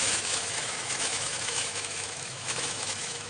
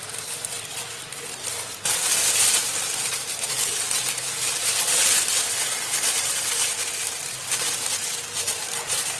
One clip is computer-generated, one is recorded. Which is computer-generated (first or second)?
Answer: first